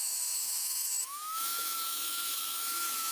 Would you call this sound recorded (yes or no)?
no